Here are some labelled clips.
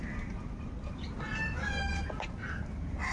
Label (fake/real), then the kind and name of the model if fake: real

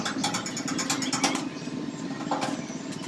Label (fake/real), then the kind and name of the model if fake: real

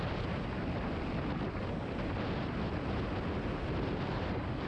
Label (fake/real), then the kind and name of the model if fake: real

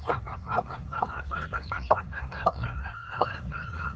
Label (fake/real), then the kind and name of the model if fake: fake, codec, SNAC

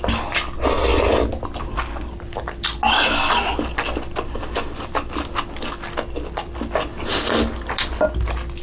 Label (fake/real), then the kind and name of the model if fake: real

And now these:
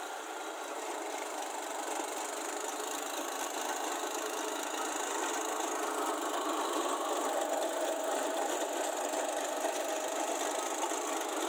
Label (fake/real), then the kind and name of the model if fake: real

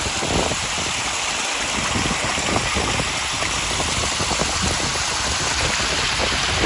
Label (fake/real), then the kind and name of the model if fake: real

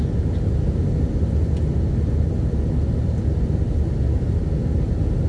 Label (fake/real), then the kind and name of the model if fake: real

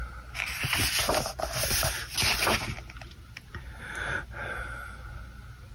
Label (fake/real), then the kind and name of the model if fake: real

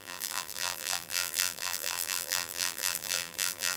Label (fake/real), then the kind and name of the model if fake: fake, vocoder, BigVGAN v2